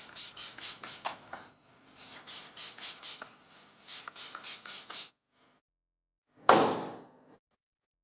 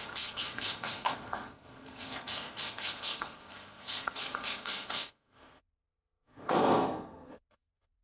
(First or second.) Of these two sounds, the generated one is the second